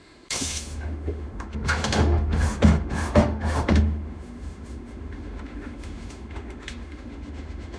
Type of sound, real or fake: fake